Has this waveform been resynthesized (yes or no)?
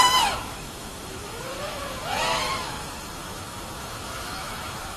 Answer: yes